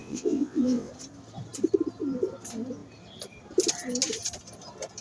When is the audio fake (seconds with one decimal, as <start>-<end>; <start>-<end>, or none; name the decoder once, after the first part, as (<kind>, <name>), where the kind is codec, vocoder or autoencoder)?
0.0-0.9 (vocoder, WaveNeXt)